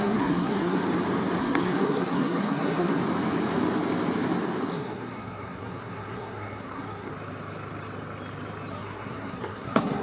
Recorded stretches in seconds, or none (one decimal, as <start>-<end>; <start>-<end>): 0.8-1.4; 3.0-4.7; 7.1-8.7